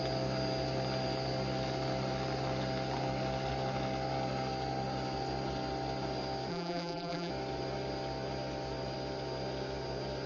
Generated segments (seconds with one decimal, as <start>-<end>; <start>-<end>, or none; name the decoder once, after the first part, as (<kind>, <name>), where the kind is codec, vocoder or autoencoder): 6.5-7.3 (vocoder, BigVGAN v2)